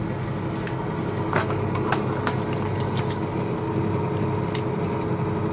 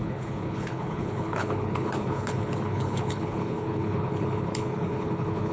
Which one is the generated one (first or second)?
second